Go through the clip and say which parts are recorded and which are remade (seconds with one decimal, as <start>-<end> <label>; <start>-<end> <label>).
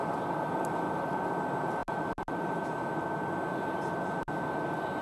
0.0-5.0 recorded